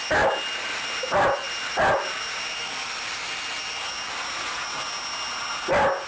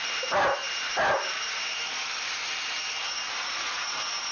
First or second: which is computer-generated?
second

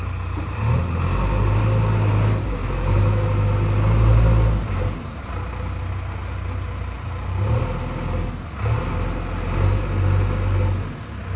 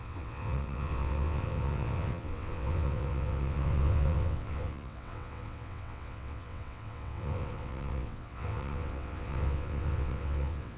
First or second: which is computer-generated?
second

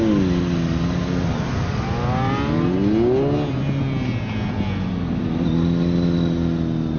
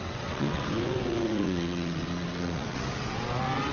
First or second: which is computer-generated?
second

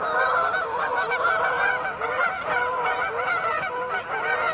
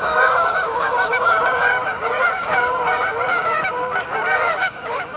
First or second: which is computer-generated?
second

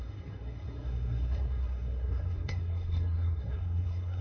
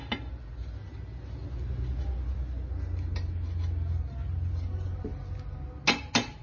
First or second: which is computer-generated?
first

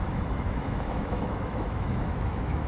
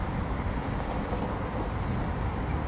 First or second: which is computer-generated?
first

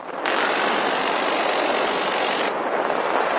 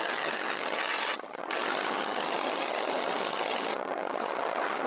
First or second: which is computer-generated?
second